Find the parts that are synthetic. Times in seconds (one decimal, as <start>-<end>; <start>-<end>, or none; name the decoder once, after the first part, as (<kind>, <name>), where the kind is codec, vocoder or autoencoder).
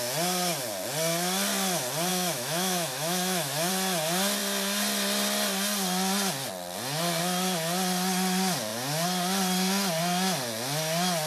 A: 2.1-3.7 (autoencoder, DAC-VAE)